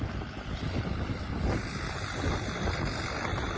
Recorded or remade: recorded